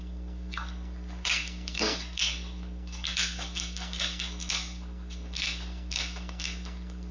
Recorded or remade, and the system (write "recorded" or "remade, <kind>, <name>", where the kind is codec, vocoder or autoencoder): remade, codec, SNAC